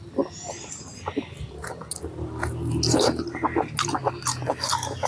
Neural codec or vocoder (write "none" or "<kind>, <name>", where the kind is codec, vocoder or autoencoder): none